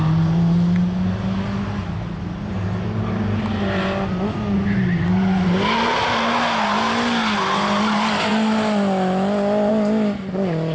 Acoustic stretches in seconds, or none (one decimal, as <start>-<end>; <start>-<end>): 0.0-10.7